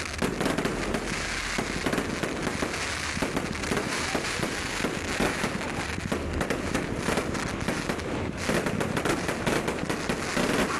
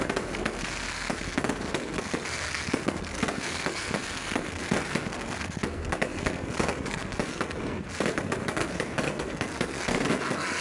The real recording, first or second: first